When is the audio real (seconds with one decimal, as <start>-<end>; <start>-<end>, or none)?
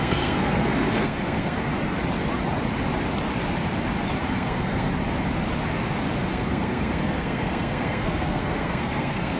1.7-4.3; 4.9-6.3